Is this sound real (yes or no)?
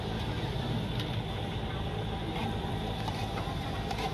yes